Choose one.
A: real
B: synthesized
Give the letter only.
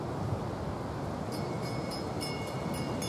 A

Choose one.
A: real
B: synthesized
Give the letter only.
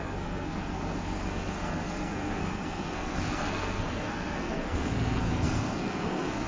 B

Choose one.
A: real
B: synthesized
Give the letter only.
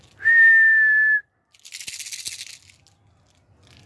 A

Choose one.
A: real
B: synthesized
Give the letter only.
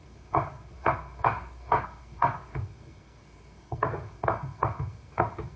B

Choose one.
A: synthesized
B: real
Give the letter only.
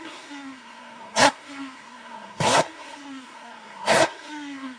A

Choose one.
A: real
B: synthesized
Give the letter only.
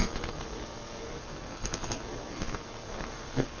B